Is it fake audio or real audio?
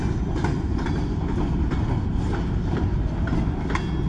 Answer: real